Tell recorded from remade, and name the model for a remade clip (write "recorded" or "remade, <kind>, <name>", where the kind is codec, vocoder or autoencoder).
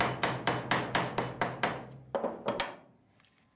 recorded